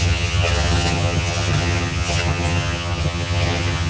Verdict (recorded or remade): remade